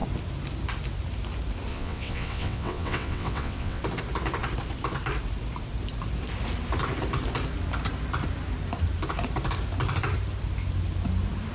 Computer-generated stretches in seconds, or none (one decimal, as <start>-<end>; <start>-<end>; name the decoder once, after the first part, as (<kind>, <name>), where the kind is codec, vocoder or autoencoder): 1.7-3.8 (vocoder, WaveNeXt)